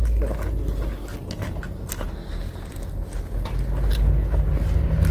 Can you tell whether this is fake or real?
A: real